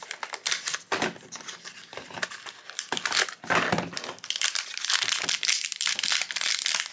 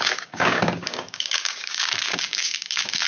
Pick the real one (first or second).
first